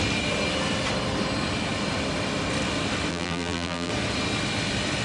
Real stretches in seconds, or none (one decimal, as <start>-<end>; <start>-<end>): 0.0-3.1; 3.9-5.0